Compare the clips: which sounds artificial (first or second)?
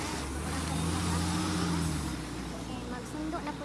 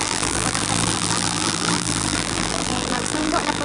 second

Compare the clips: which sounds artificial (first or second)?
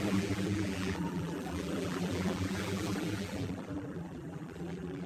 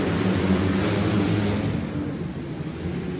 first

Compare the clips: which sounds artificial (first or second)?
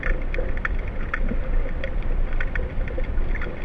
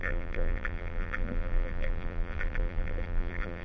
second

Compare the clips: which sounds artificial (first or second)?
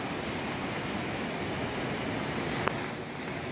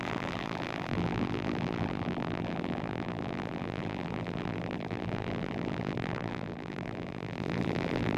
second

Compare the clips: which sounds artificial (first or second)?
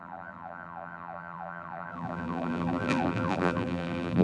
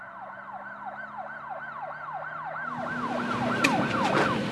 first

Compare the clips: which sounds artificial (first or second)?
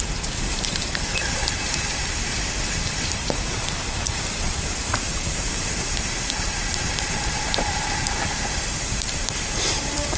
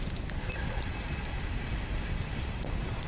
first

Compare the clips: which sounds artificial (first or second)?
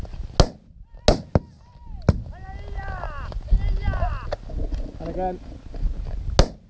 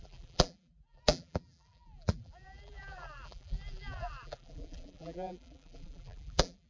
second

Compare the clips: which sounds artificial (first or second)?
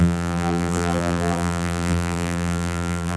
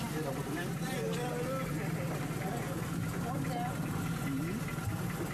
first